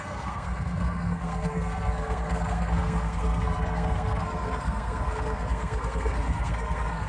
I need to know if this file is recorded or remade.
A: remade